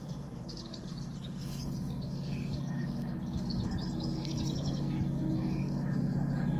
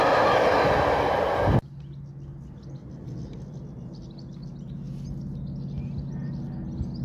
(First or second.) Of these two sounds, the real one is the second